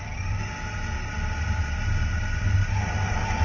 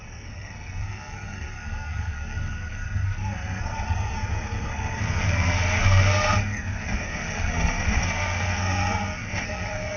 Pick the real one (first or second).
first